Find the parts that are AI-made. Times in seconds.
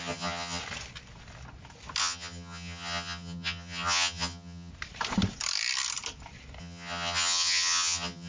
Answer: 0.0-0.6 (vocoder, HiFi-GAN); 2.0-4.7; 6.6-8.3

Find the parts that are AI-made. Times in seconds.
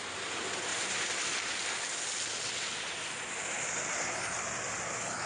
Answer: none